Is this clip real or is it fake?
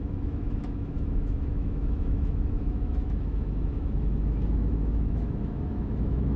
fake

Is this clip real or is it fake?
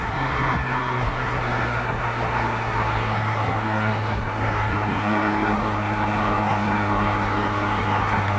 fake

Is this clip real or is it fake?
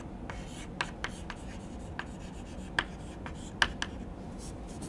real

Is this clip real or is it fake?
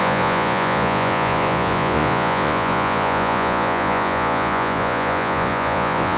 fake